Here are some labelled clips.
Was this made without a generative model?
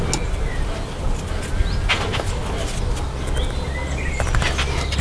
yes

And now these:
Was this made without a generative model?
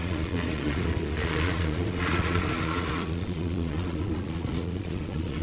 no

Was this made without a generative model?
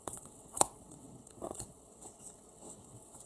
no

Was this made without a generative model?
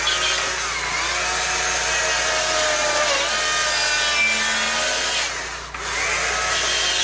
yes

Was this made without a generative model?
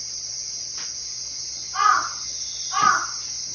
yes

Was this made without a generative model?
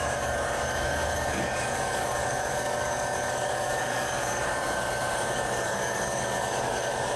no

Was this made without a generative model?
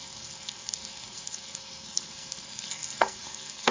no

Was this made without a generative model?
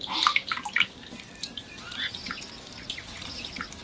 yes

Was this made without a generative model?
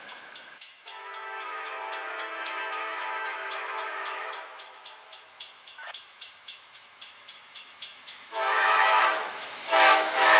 no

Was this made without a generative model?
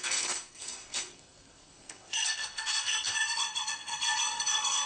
no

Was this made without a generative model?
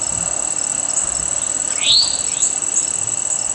yes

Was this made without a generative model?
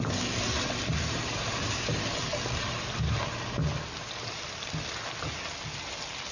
yes